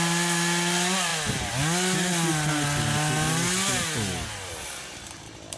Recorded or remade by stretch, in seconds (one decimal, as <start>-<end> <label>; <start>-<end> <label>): 0.0-5.6 recorded